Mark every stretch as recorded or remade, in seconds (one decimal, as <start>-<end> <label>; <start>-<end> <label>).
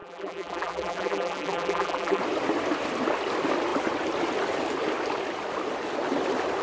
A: 0.0-2.2 remade; 2.2-6.6 recorded